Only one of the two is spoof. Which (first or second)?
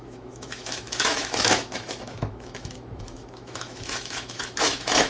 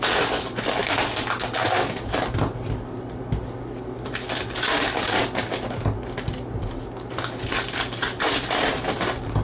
first